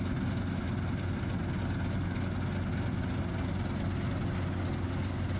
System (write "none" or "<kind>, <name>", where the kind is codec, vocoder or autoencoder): none